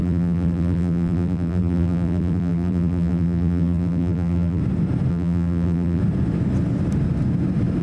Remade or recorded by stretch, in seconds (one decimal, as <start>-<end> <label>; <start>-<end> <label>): 0.0-4.6 remade; 4.6-5.1 recorded; 5.1-6.0 remade; 6.0-7.8 recorded